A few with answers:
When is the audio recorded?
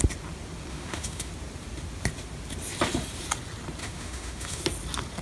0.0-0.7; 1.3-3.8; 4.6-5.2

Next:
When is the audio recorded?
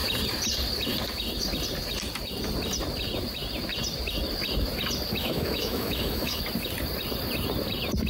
0.0-5.2; 6.4-8.1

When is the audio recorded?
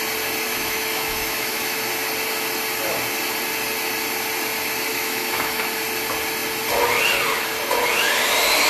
0.0-0.5; 1.8-4.9; 5.6-8.7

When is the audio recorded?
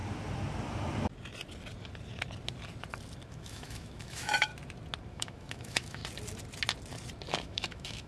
0.0-3.3; 4.5-5.1; 6.0-7.3